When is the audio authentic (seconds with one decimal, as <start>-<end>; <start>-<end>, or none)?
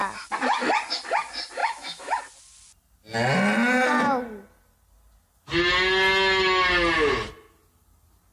0.0-1.6; 2.2-8.3